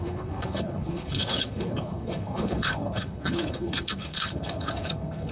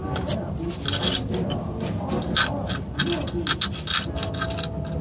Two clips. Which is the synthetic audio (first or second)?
first